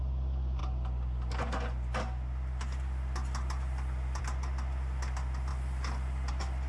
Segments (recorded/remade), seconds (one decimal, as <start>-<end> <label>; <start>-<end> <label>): 0.0-6.7 recorded